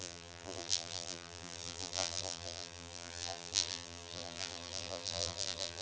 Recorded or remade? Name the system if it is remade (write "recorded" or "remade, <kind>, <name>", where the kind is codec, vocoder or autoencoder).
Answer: remade, vocoder, BigVGAN v2